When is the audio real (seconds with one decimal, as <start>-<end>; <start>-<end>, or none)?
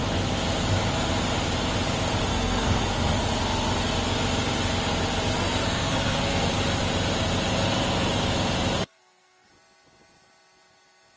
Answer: 0.0-2.3; 3.2-5.4; 6.5-8.8; 9.5-11.2